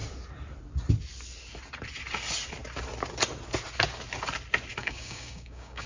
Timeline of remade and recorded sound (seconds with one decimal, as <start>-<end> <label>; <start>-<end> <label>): 0.0-4.8 recorded; 4.8-5.9 remade

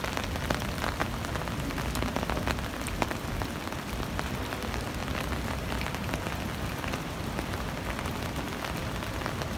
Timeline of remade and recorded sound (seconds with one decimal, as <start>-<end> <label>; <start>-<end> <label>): 0.0-9.6 recorded

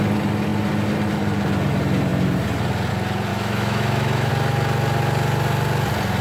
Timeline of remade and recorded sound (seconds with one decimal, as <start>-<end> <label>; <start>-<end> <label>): 0.0-3.3 recorded; 3.3-4.3 remade; 4.3-6.2 recorded

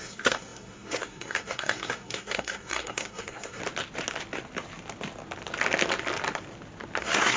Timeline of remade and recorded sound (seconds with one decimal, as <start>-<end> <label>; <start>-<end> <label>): 0.0-3.6 remade; 3.6-7.0 recorded; 7.0-7.4 remade

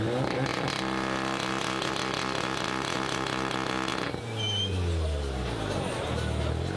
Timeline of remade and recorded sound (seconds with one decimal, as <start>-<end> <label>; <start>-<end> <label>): 0.0-6.8 recorded

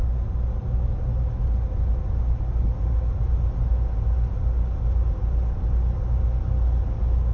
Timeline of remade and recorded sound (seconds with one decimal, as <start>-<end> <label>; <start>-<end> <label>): 0.0-7.3 recorded

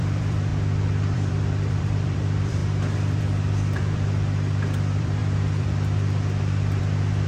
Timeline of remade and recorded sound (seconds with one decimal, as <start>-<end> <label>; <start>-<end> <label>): 0.0-2.6 remade; 2.6-3.2 recorded; 3.2-7.3 remade

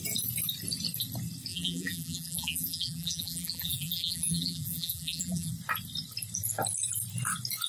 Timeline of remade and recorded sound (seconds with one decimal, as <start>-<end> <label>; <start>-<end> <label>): 0.0-1.5 recorded; 1.5-5.5 remade; 5.5-7.7 recorded